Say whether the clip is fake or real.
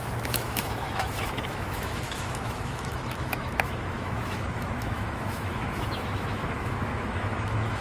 fake